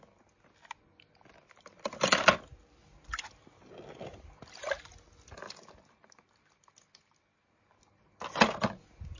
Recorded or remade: recorded